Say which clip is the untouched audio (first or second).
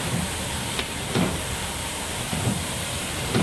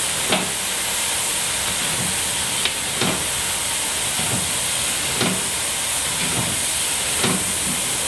second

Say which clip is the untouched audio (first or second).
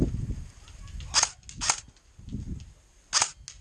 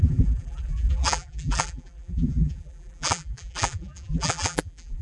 first